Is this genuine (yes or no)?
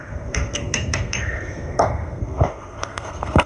no